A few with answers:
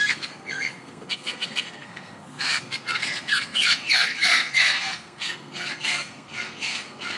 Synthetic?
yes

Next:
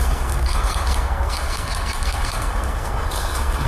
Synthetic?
yes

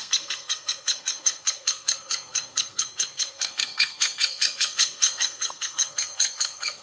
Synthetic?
yes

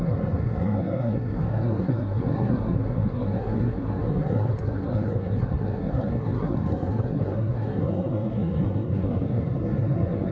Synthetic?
yes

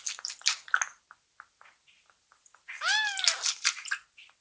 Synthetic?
no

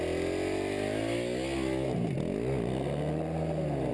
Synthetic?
no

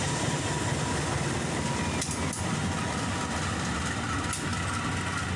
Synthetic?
no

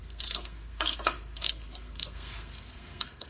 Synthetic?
yes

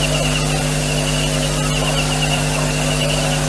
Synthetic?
no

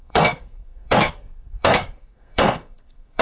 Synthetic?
yes